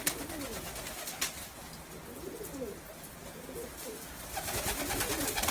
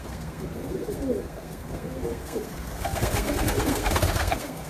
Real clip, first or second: first